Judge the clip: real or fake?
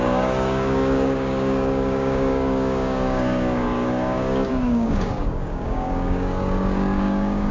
fake